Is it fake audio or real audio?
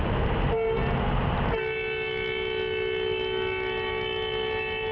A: real